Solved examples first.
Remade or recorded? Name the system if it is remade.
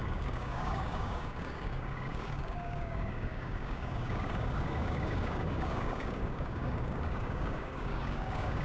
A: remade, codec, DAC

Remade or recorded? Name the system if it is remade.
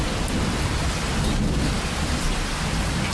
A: recorded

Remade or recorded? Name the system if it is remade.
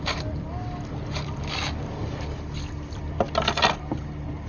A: recorded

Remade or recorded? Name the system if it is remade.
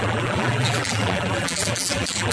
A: remade, vocoder, BigVGAN v2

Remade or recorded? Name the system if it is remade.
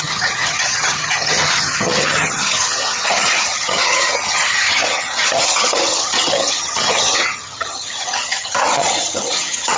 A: remade, vocoder, HiFi-GAN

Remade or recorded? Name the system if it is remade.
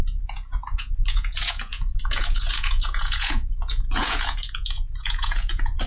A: remade, vocoder, Vocos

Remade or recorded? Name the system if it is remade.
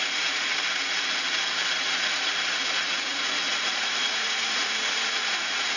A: remade, vocoder, Vocos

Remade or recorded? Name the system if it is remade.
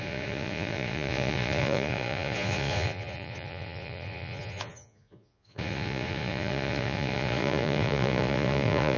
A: remade, vocoder, Vocos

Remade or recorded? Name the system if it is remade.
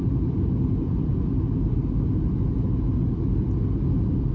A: recorded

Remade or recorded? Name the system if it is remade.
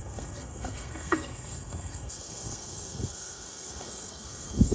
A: remade, codec, SNAC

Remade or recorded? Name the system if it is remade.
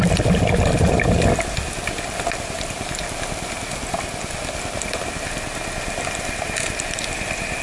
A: recorded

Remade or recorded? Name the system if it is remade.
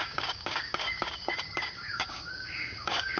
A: remade, codec, DAC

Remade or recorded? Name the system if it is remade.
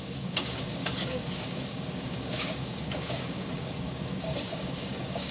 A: remade, codec, DAC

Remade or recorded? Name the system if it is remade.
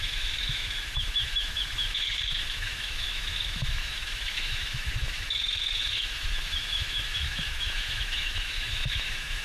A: remade, autoencoder, DAC-VAE